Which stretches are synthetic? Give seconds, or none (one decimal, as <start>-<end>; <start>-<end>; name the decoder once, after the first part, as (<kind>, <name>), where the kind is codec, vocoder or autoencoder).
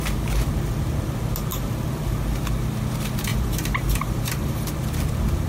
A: 1.5-2.4 (vocoder, BigVGAN v2); 3.3-4.7